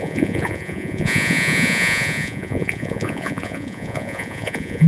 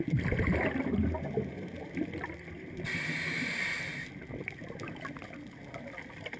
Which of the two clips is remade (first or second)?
first